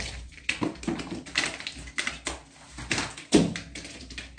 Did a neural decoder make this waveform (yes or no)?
no